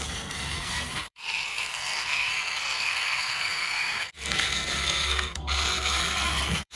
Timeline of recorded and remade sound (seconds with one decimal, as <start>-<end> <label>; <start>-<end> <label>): 0.0-6.8 remade